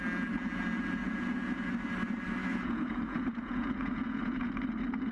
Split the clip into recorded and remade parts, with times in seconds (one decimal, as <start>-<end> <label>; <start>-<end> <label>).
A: 0.0-1.0 recorded; 1.0-1.7 remade; 1.7-2.4 recorded; 2.4-4.5 remade; 4.5-5.1 recorded